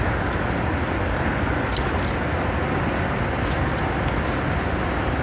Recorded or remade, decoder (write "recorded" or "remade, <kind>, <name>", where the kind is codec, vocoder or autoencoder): recorded